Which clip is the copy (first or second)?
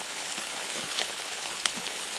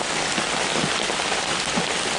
first